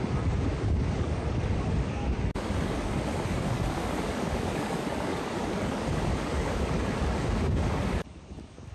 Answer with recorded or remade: remade